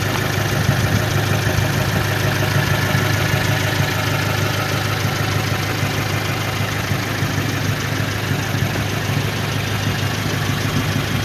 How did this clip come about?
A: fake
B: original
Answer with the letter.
B